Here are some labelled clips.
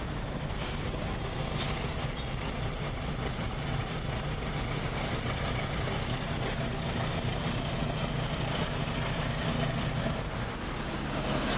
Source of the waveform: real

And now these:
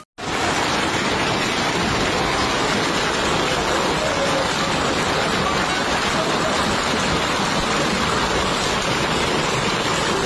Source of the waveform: real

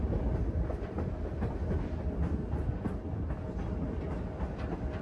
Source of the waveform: real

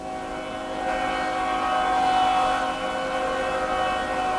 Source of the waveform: real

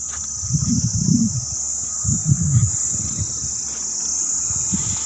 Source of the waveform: real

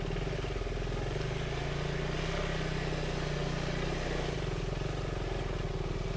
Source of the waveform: real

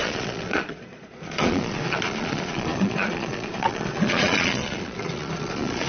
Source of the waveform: fake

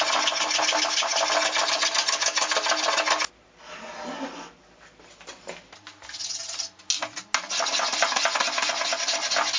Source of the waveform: real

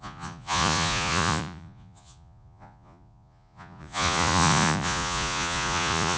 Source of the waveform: fake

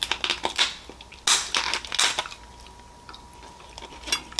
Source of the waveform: real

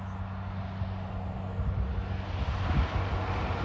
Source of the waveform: real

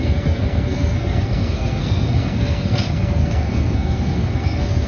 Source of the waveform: fake